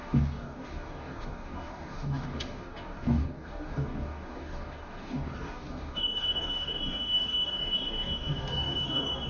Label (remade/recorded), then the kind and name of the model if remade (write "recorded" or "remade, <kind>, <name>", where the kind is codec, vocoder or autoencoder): remade, codec, DAC